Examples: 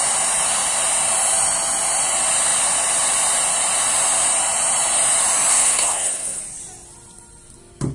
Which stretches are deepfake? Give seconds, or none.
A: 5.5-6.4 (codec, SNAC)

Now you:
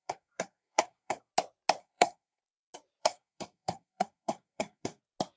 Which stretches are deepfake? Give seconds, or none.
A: 0.0-1.3 (codec, SNAC); 1.8-2.4; 3.0-5.0

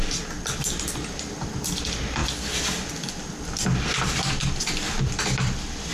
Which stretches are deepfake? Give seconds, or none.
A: none